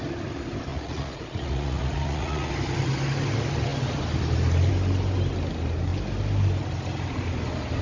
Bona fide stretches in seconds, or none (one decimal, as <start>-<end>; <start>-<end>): 0.0-0.7; 2.5-7.8